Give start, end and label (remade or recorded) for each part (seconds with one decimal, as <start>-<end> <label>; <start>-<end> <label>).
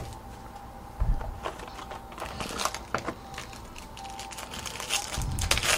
0.0-5.8 recorded